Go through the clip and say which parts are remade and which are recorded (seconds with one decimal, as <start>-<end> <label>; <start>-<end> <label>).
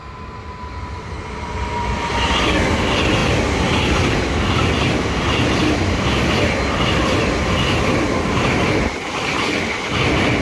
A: 0.0-10.4 recorded